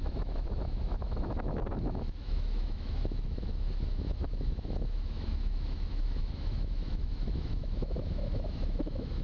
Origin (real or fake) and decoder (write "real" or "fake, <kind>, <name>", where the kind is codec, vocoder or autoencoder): fake, autoencoder, DAC-VAE